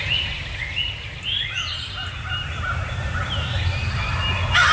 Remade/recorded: recorded